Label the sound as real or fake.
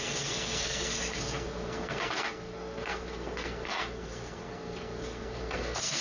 fake